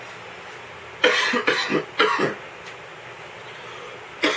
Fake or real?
real